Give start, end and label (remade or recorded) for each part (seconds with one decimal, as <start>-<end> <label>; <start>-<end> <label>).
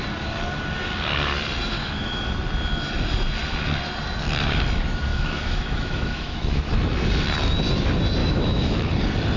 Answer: 0.0-1.8 recorded; 1.8-2.3 remade; 2.3-5.1 recorded; 5.1-6.7 remade; 6.7-8.2 recorded; 8.2-8.9 remade; 8.9-9.4 recorded